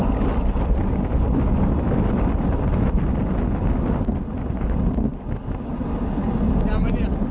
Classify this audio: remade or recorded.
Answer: recorded